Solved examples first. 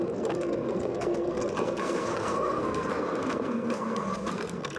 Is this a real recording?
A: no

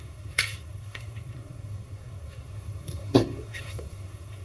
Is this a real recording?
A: no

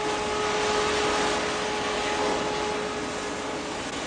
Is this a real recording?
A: yes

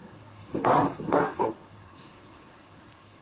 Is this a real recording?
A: no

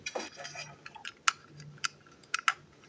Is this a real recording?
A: yes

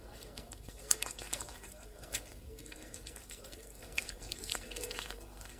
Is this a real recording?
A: no